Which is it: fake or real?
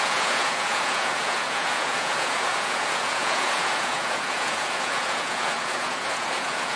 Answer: fake